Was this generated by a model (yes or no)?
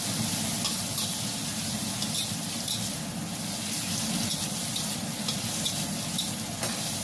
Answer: no